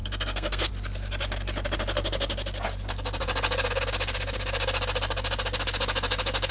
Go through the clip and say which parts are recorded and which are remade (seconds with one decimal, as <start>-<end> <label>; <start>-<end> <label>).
0.0-0.7 remade; 0.7-6.5 recorded